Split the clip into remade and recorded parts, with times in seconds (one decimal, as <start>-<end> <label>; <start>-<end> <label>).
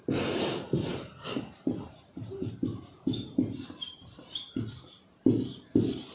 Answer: 0.0-0.9 recorded; 0.9-4.6 remade; 4.6-6.1 recorded